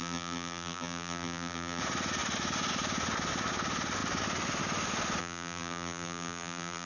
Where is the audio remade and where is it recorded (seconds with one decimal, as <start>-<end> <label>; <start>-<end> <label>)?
0.0-1.8 remade; 1.8-5.2 recorded; 5.2-6.9 remade